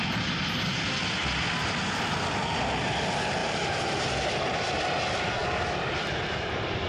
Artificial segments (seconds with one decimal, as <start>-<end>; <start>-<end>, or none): 3.4-4.3